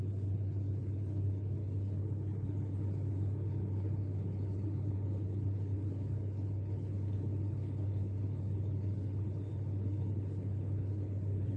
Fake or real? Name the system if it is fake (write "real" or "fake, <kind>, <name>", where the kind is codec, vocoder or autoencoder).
fake, codec, HILCodec